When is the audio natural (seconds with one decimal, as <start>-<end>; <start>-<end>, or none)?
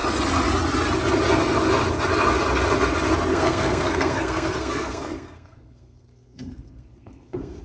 0.0-3.3